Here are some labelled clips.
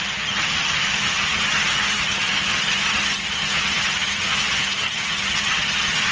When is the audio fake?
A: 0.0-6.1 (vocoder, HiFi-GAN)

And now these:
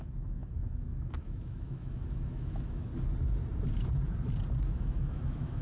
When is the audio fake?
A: 0.0-2.9 (autoencoder, DAC-VAE); 4.7-5.6

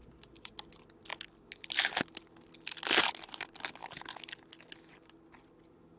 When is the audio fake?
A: none

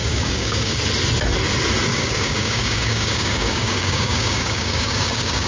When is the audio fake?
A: 0.0-0.8 (codec, DAC); 1.9-5.5

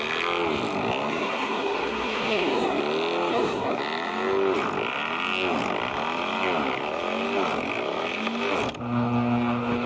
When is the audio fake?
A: 1.1-2.8 (codec, SNAC); 3.3-3.8

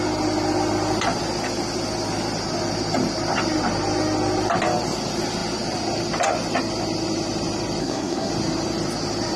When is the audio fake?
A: 7.8-8.3 (codec, SNAC)

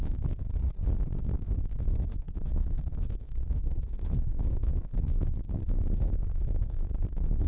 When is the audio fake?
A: 0.0-0.4 (codec, SNAC); 1.2-7.5